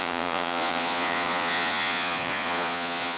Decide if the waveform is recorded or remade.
remade